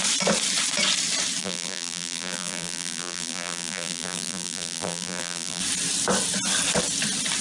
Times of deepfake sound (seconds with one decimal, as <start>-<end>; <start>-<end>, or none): 1.4-5.6